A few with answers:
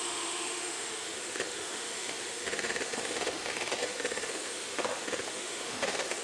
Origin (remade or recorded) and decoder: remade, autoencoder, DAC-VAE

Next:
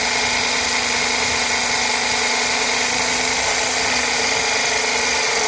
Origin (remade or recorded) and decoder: recorded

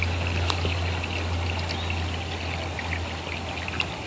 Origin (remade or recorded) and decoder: recorded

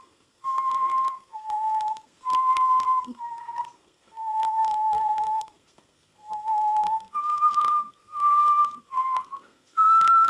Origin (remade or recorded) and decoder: remade, codec, SNAC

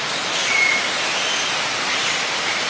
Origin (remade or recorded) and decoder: recorded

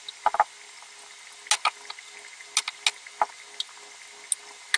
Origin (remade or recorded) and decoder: recorded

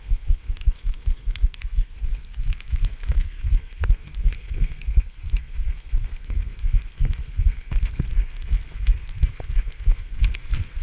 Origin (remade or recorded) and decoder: remade, codec, SNAC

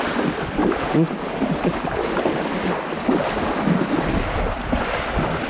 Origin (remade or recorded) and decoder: recorded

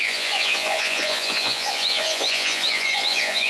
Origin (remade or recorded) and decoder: remade, vocoder, Vocos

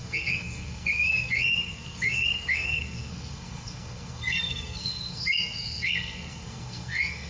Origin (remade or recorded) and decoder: remade, codec, SNAC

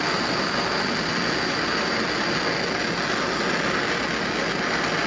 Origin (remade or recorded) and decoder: recorded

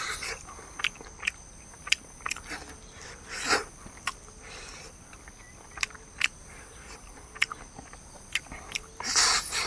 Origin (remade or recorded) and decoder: recorded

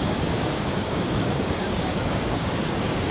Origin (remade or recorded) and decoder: remade, codec, DAC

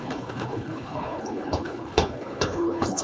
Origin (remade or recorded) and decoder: remade, codec, HILCodec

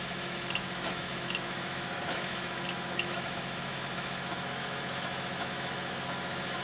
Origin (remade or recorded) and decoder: remade, autoencoder, DAC-VAE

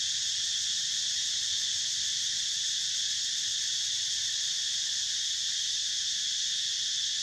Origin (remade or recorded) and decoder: recorded